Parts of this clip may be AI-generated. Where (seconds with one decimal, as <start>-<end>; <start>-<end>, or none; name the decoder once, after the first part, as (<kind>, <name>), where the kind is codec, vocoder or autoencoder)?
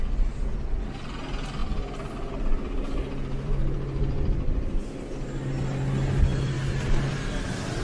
1.6-4.8 (vocoder, BigVGAN v2); 6.3-7.8